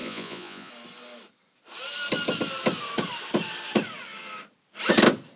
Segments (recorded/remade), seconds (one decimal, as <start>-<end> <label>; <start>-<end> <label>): 0.0-0.7 remade; 0.7-5.4 recorded